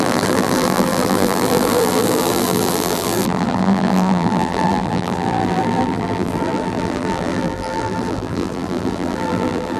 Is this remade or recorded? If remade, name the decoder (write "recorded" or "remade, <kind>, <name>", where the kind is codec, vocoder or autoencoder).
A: remade, vocoder, BigVGAN v2